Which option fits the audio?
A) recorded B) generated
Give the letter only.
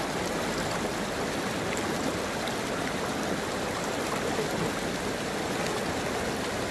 A